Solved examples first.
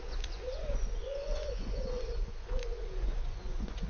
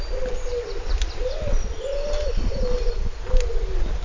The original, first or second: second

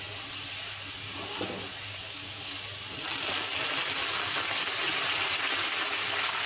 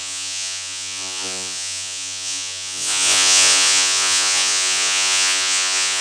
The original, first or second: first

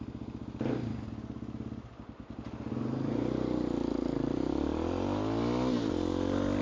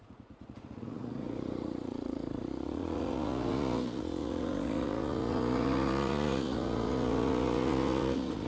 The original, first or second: first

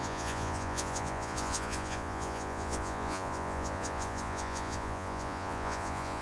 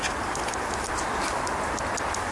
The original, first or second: second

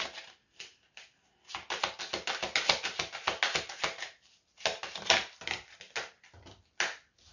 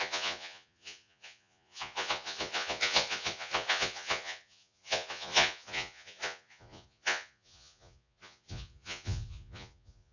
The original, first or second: first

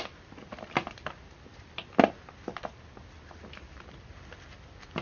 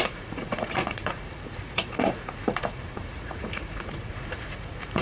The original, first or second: first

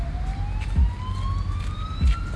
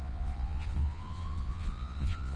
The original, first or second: first